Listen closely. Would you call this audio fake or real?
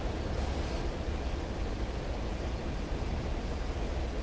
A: real